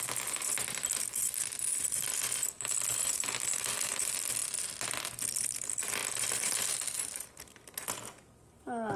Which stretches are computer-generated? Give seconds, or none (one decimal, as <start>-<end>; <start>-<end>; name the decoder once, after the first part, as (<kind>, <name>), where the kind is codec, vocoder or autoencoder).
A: none